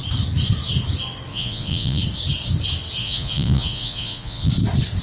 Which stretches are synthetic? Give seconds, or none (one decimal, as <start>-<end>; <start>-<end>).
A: 1.3-2.0; 3.0-4.5